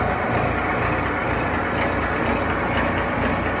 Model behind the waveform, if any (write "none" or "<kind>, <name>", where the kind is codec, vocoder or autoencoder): none